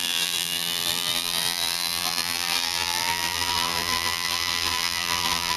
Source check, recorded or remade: remade